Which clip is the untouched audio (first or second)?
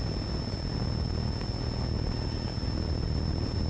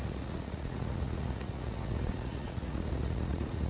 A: first